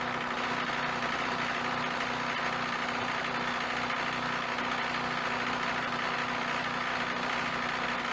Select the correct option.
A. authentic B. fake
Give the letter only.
A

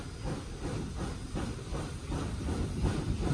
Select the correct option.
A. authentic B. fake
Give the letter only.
A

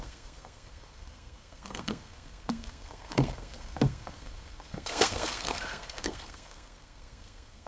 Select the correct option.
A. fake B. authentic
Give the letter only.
A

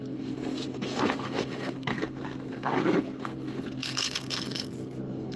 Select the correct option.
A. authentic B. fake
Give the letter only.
B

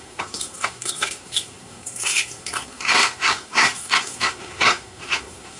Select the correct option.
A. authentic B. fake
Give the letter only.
B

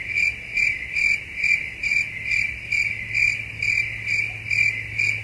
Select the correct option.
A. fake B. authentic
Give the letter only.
B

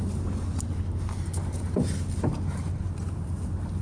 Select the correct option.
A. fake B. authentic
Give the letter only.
B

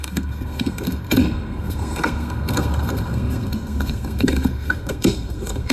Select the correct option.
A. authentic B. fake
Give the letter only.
B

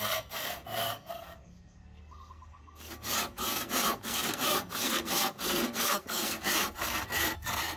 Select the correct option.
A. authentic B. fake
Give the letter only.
B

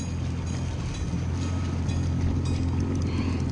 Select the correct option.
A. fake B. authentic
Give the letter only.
B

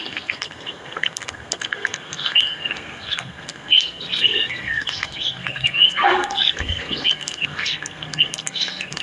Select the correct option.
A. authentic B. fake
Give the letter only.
B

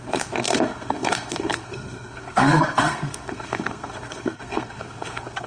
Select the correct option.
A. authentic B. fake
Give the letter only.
B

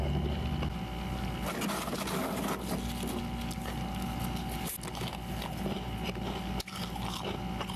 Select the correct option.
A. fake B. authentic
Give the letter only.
B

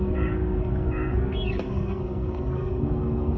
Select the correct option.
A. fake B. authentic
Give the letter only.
A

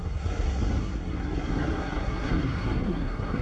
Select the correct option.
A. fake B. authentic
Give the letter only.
A